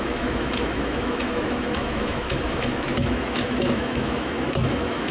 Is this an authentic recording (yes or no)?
no